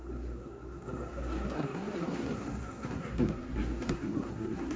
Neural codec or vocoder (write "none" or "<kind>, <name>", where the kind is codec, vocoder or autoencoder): codec, SNAC